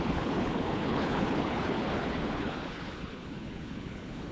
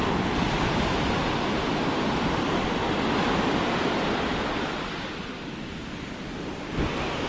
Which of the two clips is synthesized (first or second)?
first